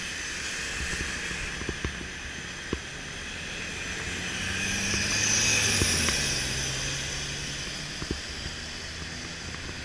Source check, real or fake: real